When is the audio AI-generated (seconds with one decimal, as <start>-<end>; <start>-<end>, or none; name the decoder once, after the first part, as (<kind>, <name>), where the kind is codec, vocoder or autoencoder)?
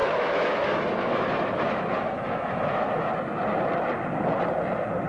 0.0-3.1 (autoencoder, DAC-VAE)